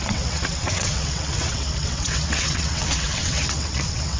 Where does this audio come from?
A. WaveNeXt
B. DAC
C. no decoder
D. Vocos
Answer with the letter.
A